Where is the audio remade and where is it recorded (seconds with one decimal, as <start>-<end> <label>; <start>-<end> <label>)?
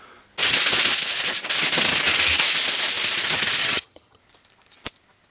0.0-3.6 recorded; 3.6-4.2 remade; 4.2-5.3 recorded